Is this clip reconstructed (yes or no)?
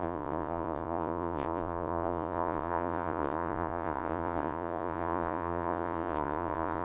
yes